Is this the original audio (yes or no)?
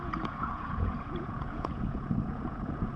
no